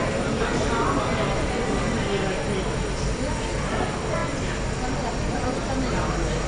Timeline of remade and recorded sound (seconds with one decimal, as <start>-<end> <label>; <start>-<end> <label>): 0.0-6.5 recorded